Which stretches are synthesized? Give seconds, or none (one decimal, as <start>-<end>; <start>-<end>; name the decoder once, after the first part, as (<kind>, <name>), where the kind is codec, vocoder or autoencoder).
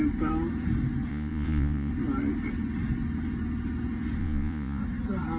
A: 1.1-1.9 (vocoder, Vocos); 4.2-4.8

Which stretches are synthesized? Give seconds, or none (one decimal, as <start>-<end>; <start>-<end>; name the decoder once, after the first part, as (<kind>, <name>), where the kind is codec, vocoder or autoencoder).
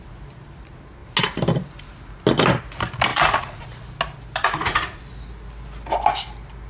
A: 3.1-3.6 (vocoder, Vocos); 4.4-5.0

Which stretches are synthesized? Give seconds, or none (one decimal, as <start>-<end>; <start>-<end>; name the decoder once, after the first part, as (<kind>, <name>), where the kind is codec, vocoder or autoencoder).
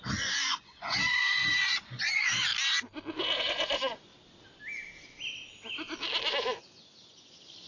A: 0.0-2.5 (vocoder, Vocos); 3.4-4.1; 6.3-7.7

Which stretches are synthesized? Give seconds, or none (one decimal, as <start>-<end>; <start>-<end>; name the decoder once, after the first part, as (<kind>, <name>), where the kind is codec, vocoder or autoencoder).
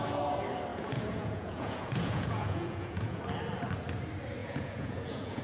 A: 0.7-3.2 (vocoder, Vocos); 4.4-5.4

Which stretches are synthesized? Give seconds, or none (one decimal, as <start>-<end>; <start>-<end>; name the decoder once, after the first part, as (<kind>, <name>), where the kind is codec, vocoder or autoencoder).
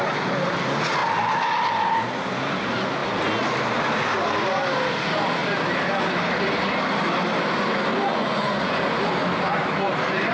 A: 8.1-8.8 (vocoder, Vocos)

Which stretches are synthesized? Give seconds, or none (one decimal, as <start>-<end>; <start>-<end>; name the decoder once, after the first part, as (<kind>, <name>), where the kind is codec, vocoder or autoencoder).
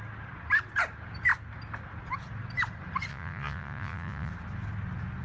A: 3.1-4.3 (vocoder, Vocos)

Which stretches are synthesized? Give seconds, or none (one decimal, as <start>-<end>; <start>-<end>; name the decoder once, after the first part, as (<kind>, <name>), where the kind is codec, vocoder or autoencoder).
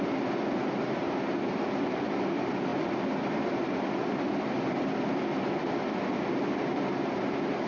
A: none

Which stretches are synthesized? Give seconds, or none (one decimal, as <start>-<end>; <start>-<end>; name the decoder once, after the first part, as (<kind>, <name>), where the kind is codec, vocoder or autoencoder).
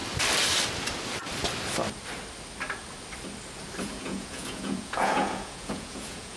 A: 3.8-6.4 (vocoder, Vocos)